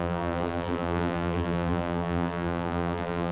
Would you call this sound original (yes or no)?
no